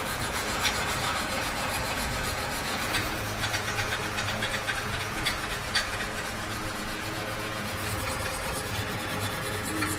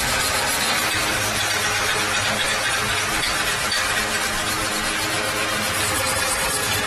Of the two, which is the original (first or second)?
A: second